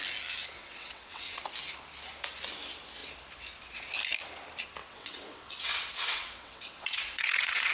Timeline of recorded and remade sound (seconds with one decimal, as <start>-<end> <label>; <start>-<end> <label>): 0.0-0.6 recorded; 0.6-1.4 remade; 1.4-4.8 recorded; 4.8-7.7 remade